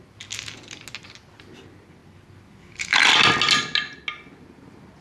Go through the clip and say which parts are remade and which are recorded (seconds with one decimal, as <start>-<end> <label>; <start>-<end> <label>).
0.0-5.0 recorded